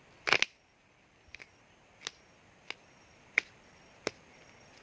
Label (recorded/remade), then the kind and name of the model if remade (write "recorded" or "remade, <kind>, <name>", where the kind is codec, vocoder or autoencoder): recorded